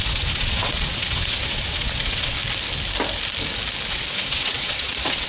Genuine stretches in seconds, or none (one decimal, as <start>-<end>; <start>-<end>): 2.4-3.9